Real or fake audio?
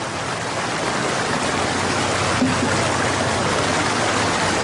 real